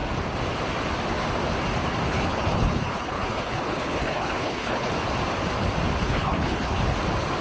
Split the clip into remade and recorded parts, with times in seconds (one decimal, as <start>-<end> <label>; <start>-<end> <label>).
0.0-2.1 recorded; 2.1-4.9 remade; 4.9-6.0 recorded; 6.0-6.8 remade; 6.8-7.4 recorded